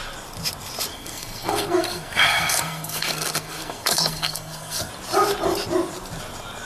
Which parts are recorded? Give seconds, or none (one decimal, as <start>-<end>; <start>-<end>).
0.0-0.9; 4.9-6.7